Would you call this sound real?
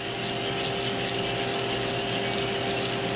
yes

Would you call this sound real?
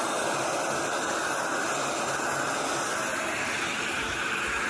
yes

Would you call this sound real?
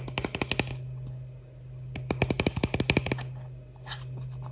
yes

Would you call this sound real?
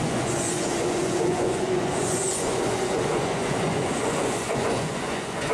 no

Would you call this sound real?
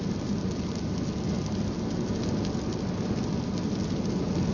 yes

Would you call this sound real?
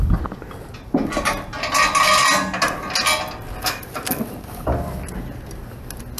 yes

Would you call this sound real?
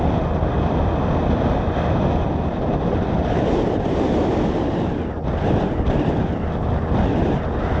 yes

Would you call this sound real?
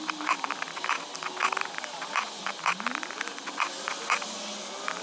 yes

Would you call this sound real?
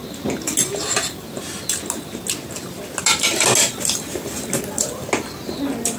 yes